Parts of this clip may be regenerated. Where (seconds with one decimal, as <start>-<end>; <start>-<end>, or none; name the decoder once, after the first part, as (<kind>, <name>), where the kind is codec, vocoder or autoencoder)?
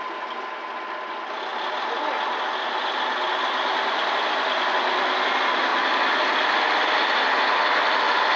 none